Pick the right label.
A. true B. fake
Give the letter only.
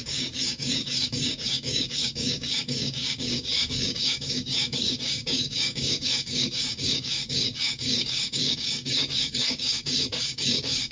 B